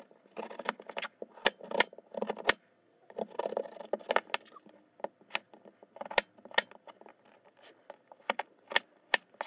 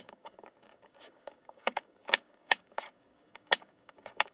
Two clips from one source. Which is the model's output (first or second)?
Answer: second